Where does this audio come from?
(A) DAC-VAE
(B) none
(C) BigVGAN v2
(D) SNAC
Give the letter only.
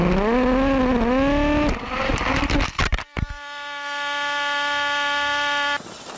B